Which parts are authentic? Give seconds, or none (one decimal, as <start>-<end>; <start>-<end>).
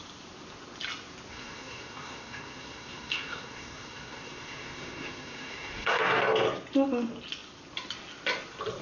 0.0-1.3; 6.0-8.8